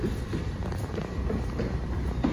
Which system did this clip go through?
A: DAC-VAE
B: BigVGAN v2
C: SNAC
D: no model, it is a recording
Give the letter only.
D